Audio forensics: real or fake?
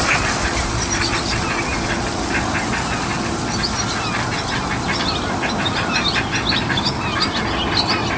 real